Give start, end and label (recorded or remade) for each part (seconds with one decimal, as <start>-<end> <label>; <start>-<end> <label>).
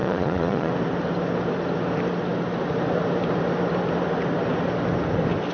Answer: 0.0-0.7 remade; 0.7-5.5 recorded